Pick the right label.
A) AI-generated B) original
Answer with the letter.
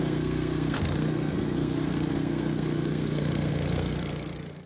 A